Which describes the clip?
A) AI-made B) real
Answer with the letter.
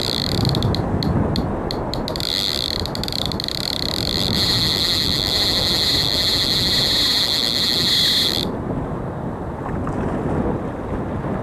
B